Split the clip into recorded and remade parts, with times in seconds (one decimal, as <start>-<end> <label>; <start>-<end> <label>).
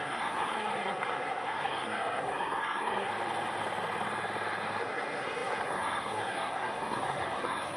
0.0-3.1 remade; 3.1-4.8 recorded; 4.8-7.8 remade